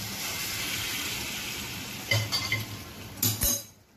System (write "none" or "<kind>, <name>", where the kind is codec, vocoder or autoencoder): none